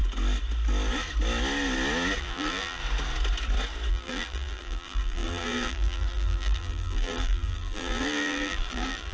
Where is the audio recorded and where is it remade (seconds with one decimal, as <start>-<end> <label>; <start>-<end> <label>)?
0.0-2.2 recorded; 2.2-2.8 remade; 2.8-3.9 recorded; 3.9-9.1 remade